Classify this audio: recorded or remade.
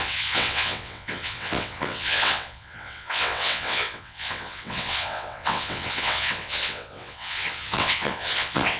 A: remade